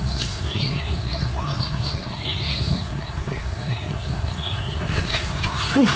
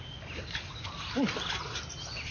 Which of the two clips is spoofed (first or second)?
first